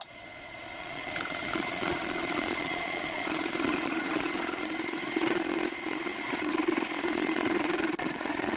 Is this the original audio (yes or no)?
no